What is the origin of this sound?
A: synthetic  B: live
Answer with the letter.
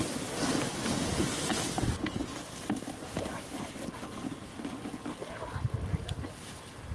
B